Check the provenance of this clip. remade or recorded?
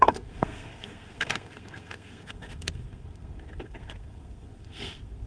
remade